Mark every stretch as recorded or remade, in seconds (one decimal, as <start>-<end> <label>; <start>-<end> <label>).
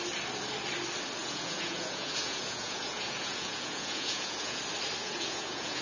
0.0-1.2 recorded; 1.2-4.6 remade; 4.6-5.0 recorded; 5.0-5.8 remade